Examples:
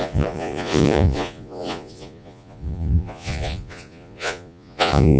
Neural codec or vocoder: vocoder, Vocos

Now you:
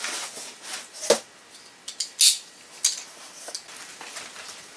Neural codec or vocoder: none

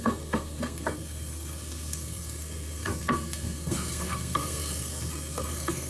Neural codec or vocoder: codec, SNAC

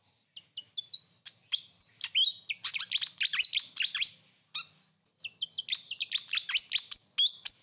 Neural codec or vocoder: none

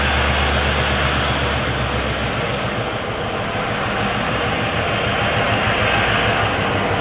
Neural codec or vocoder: none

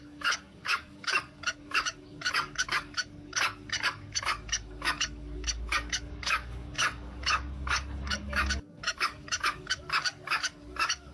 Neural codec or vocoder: codec, DAC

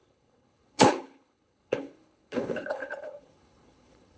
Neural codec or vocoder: codec, HILCodec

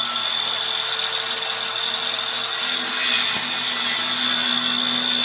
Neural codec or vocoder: none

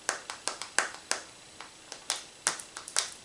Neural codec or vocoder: none